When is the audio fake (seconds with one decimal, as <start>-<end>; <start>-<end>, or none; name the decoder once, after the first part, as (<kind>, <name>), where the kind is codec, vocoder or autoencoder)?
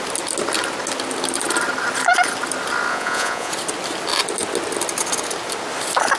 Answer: 2.9-3.5 (vocoder, Vocos)